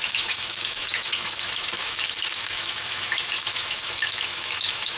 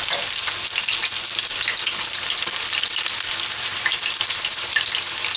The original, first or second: second